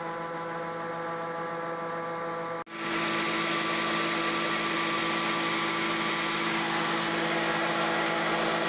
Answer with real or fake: real